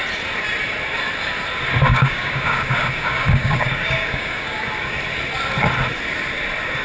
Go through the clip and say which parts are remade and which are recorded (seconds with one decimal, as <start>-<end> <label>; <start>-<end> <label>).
0.0-1.9 recorded; 1.9-4.6 remade; 4.6-6.8 recorded